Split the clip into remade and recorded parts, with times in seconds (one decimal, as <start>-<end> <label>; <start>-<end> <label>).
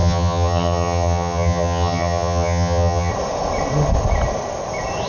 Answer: 0.0-3.1 remade; 3.1-5.1 recorded